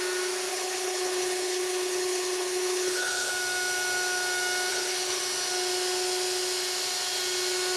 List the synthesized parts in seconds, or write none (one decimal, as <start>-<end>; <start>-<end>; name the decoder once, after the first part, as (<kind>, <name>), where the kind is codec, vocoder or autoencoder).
0.5-3.3 (codec, HILCodec); 4.7-5.2